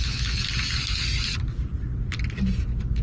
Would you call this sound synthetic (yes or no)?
no